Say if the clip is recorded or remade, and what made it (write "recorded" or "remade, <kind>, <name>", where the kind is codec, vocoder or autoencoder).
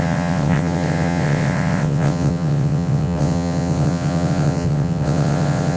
remade, vocoder, WaveNeXt